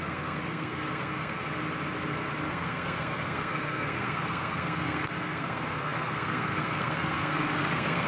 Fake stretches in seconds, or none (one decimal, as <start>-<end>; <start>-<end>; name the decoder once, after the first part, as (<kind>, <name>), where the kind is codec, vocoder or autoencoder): 0.0-1.4 (codec, SNAC); 2.5-8.1